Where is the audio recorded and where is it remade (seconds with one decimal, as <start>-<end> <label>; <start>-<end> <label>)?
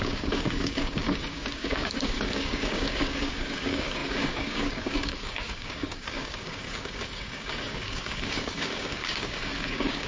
0.0-10.1 remade